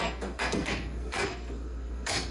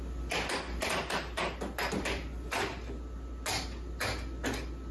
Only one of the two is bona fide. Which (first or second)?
second